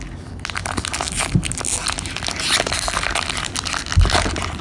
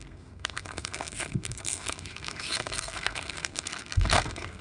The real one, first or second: first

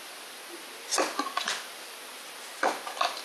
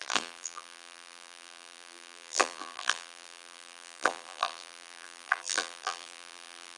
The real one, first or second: first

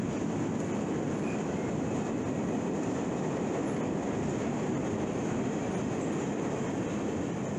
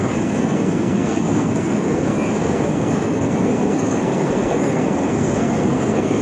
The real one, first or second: first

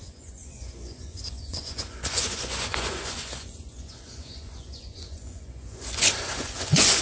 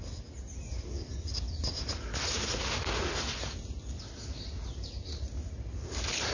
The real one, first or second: second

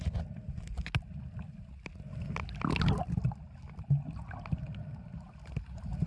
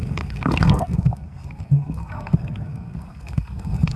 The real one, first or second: first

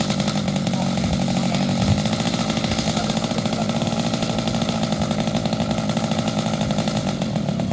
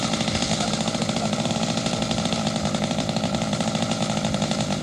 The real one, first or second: first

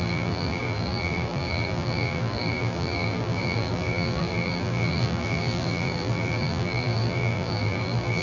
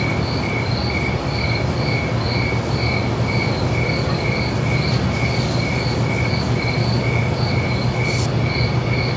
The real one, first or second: second